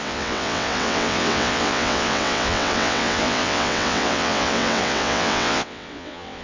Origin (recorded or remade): remade